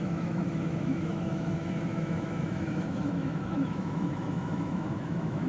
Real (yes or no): no